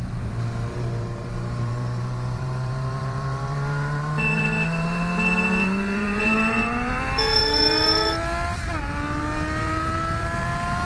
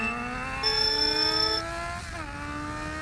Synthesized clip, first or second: first